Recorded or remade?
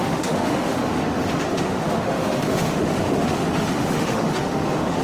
remade